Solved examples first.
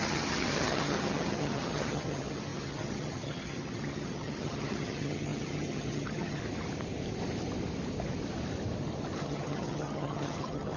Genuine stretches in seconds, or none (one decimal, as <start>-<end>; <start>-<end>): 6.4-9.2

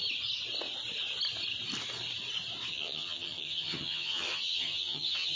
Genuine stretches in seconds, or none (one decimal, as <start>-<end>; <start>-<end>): 0.0-2.7

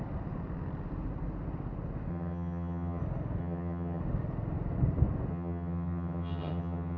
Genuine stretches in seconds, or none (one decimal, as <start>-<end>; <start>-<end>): 0.0-2.1; 3.0-3.4; 4.0-5.3